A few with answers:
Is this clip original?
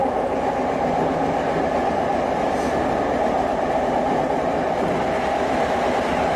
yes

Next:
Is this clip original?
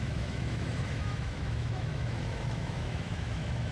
no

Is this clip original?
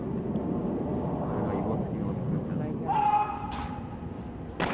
yes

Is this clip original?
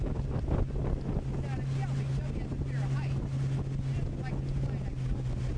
yes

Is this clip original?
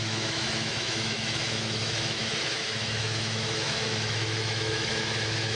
no